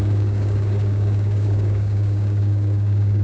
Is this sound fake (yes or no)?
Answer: yes